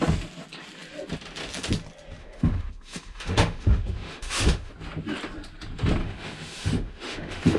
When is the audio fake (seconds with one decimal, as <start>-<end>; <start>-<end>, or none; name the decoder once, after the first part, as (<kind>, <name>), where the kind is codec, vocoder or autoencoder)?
2.2-4.7 (autoencoder, DAC-VAE); 6.0-7.6